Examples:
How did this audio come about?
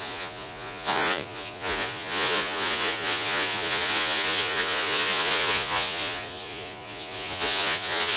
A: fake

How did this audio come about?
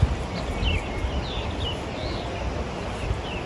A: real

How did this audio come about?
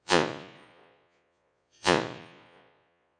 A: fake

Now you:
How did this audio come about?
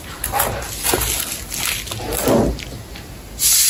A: real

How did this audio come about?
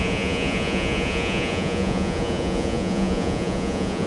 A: fake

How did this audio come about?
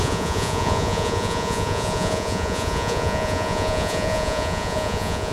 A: fake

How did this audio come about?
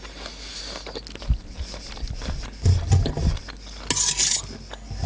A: real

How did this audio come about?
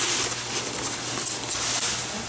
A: real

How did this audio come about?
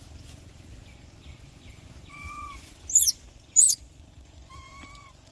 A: fake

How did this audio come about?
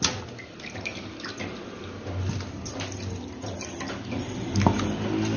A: real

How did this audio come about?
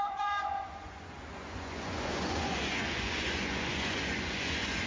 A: fake